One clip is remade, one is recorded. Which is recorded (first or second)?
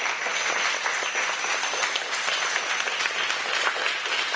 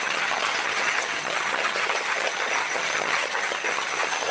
first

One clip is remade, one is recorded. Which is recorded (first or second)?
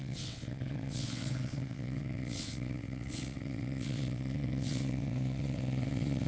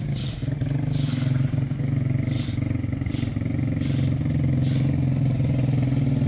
second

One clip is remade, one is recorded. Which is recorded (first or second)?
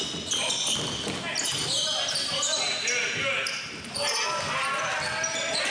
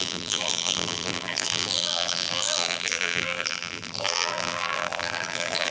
first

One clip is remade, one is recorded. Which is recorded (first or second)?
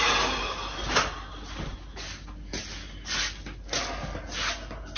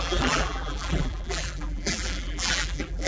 first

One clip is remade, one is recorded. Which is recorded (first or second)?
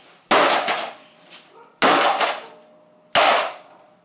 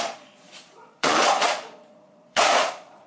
first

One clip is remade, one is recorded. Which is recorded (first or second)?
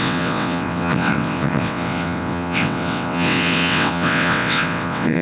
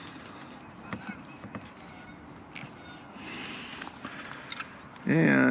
second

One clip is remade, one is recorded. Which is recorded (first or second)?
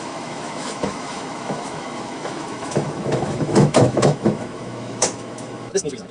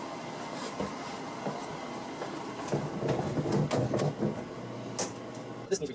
second